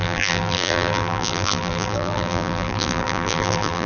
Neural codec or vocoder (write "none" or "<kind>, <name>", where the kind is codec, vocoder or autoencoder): vocoder, BigVGAN v2